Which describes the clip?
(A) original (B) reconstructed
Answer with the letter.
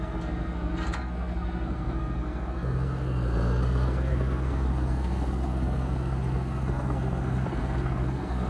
B